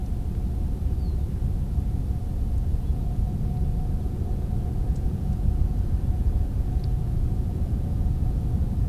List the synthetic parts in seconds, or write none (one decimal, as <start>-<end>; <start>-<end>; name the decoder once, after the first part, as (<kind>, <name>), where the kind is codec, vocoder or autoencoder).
2.4-8.9 (vocoder, Vocos)